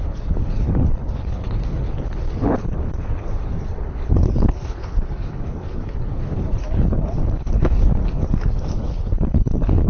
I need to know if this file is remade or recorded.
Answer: remade